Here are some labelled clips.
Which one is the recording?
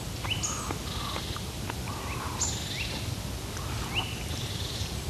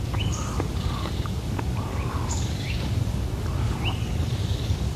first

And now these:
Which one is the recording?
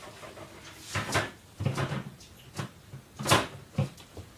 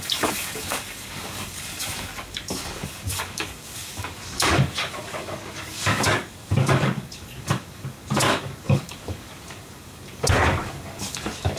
first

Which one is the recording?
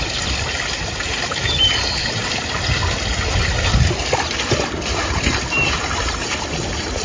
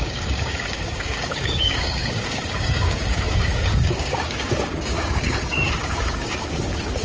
first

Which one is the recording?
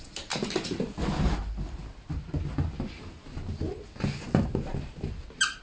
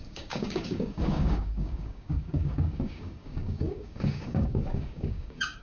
first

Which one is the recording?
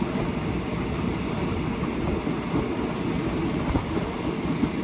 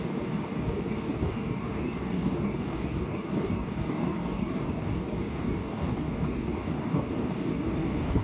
first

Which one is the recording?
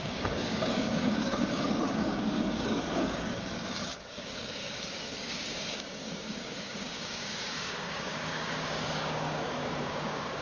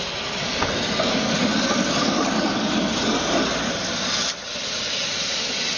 second